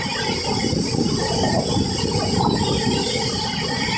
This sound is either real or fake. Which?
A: real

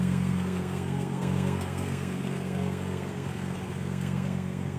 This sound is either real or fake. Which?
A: fake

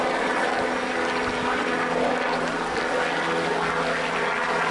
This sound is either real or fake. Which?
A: real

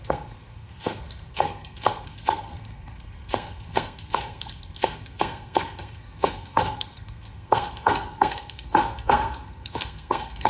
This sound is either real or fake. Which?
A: fake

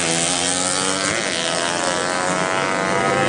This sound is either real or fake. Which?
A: real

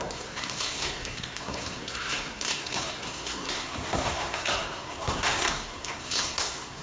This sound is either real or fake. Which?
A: fake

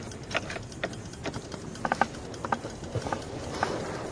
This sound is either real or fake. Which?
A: real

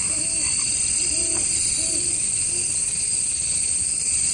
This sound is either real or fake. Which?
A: real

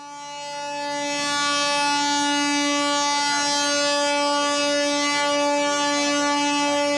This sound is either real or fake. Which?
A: real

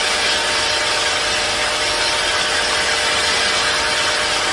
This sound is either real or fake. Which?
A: real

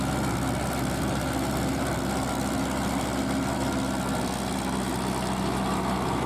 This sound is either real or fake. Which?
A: real